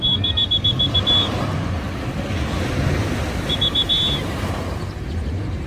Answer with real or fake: real